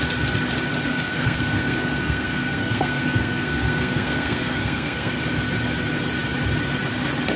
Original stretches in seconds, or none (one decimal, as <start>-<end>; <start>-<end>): 0.0-0.9; 5.1-7.4